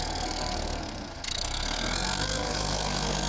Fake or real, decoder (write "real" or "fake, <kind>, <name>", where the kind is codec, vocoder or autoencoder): fake, codec, SNAC